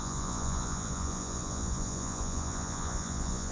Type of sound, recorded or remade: remade